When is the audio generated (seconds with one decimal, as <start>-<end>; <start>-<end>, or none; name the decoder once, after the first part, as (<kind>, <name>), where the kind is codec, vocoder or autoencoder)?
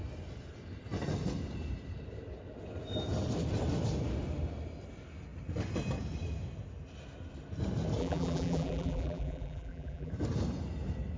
8.0-10.1 (vocoder, BigVGAN v2)